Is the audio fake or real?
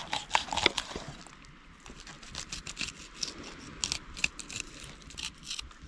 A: real